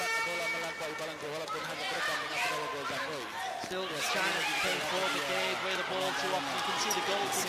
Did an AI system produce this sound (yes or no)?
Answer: no